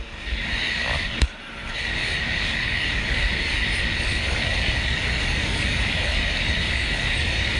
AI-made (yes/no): yes